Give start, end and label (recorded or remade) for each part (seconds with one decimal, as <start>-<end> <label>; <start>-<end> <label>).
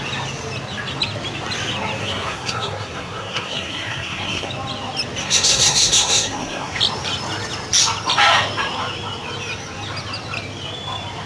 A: 0.0-2.0 recorded; 2.0-4.5 remade; 4.5-5.2 recorded; 5.2-6.8 remade; 6.8-11.3 recorded